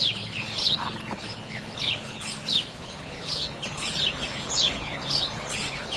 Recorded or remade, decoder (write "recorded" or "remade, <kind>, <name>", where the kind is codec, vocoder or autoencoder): remade, codec, HILCodec